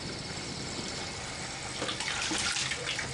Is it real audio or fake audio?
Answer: real